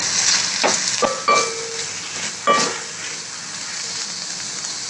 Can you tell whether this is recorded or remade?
recorded